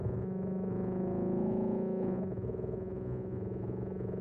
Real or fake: fake